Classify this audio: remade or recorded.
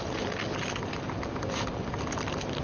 recorded